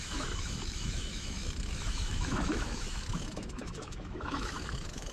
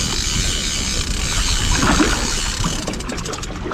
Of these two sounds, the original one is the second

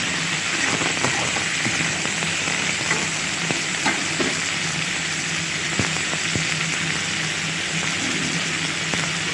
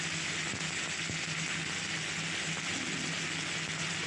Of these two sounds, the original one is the second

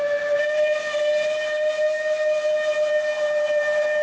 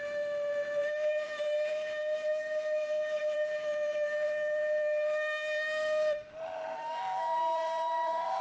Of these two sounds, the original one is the first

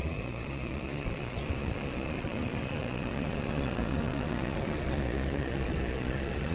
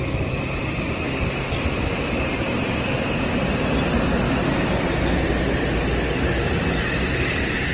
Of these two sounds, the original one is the second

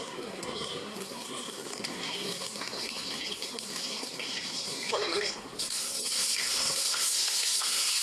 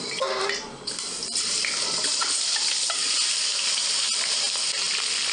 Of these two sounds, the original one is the second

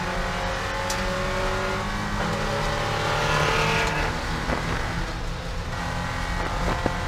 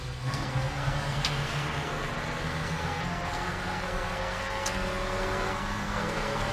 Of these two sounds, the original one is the first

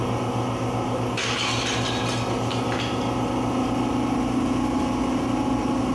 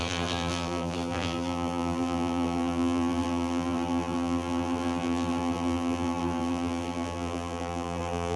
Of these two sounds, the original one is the first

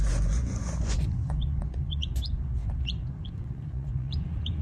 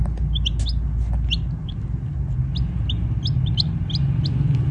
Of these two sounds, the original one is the second